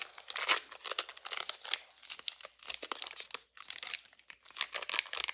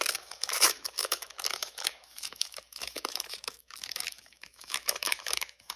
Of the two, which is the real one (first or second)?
first